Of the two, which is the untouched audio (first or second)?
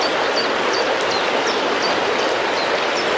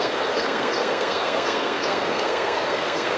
first